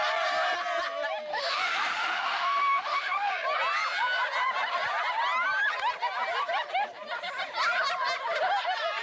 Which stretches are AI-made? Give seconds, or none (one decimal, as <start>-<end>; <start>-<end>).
1.3-3.3